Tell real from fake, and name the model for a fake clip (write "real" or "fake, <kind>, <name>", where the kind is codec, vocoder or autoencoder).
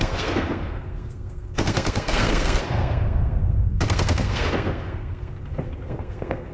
fake, codec, SNAC